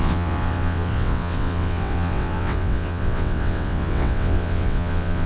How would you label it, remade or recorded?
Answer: remade